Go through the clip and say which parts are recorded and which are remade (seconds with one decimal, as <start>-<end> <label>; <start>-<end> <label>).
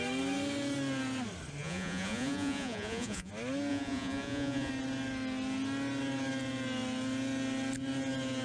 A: 0.0-1.6 recorded; 1.6-3.3 remade; 3.3-3.7 recorded; 3.7-4.7 remade; 4.7-8.4 recorded